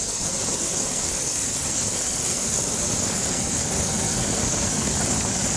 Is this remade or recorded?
remade